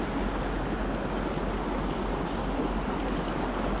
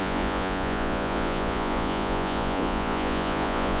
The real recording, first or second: first